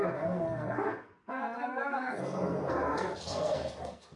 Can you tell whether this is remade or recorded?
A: remade